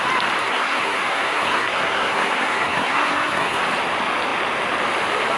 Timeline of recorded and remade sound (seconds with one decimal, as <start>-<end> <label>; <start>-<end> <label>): 0.0-0.4 recorded; 0.4-3.6 remade; 3.6-5.4 recorded